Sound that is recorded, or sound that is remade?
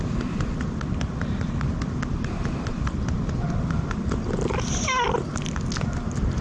recorded